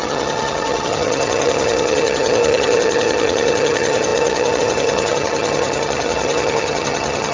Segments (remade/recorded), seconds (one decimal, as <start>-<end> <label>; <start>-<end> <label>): 0.0-7.3 remade